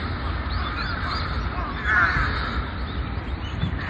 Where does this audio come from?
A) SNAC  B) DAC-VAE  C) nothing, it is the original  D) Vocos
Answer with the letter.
C